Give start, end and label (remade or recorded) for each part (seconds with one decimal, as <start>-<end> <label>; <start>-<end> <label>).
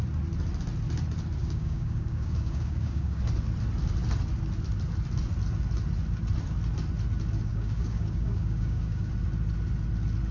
0.0-1.4 recorded; 1.4-3.2 remade; 3.2-7.5 recorded; 7.5-9.1 remade; 9.1-10.3 recorded